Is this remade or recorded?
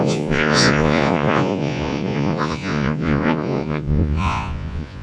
remade